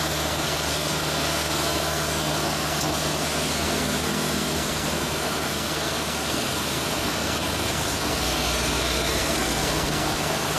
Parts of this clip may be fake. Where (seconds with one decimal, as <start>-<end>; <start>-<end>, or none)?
0.0-10.6